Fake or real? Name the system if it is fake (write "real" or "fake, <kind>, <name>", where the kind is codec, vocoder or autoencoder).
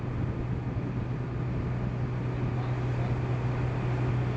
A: real